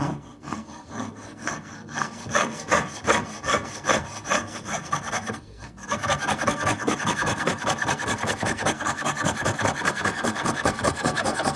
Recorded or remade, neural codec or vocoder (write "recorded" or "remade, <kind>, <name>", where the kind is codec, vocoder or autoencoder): remade, codec, SNAC